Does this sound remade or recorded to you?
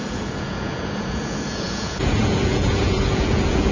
remade